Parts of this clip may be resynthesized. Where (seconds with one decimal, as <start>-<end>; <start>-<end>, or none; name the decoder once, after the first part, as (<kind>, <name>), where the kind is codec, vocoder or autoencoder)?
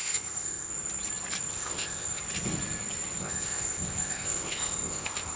0.0-0.7 (codec, ZipCodec); 1.5-2.2; 3.2-5.4